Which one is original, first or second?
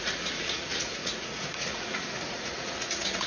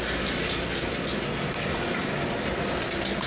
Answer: second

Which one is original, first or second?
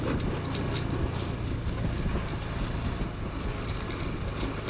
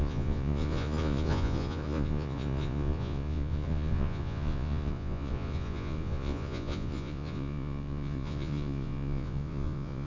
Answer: first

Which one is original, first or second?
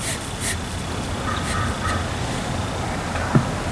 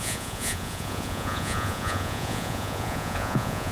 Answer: first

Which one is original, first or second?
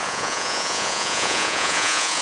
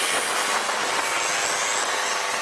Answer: second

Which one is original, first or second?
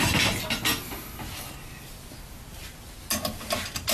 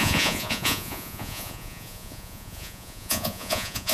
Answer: first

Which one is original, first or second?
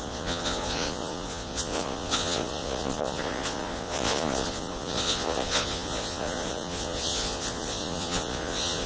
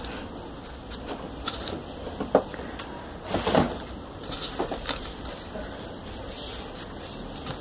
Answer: second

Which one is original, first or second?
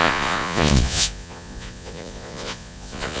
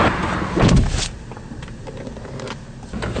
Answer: second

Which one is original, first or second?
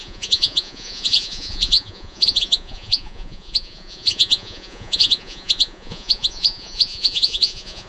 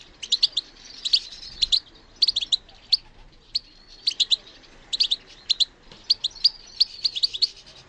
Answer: second